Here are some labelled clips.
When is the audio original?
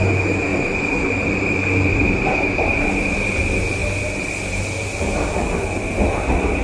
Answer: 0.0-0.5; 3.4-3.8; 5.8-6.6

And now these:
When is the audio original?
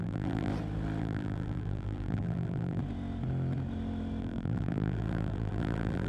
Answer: 0.5-1.0; 2.8-4.2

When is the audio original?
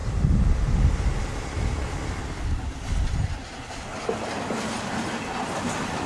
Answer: 0.0-6.1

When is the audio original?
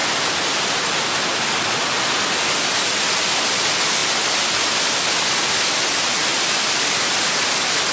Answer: 1.1-6.3; 6.8-7.9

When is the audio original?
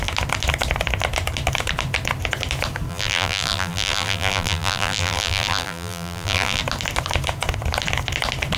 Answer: 0.0-2.9; 6.6-8.6